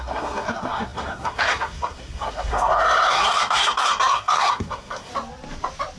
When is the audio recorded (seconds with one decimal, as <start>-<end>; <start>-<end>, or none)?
5.1-6.0